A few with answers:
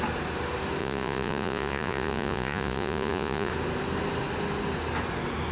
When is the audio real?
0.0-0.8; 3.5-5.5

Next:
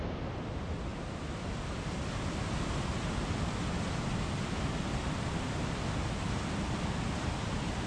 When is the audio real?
0.0-7.9

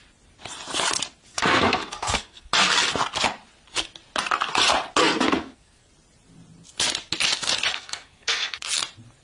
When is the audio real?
0.0-1.3; 2.5-5.0; 5.9-7.7; 8.6-9.2

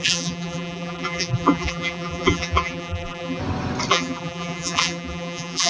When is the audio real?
3.4-3.9

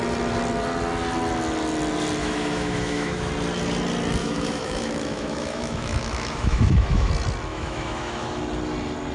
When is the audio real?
0.0-2.2; 3.3-4.2; 7.1-7.5; 8.4-9.1

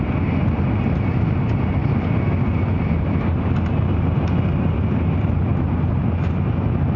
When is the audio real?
0.0-7.0